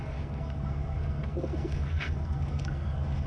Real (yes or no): no